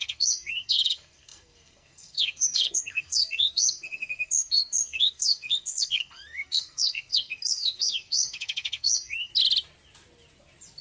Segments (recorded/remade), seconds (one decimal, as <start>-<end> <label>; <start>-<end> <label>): 0.0-9.3 remade; 9.3-10.8 recorded